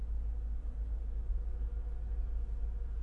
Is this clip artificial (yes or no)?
no